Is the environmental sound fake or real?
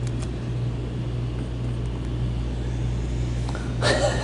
real